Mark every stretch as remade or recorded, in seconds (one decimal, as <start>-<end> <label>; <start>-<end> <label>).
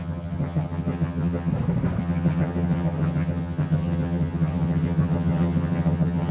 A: 0.0-1.5 remade; 1.5-2.0 recorded; 2.0-6.3 remade